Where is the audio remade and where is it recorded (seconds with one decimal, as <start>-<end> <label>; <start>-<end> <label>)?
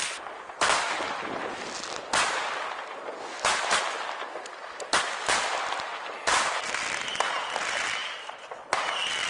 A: 0.0-9.3 recorded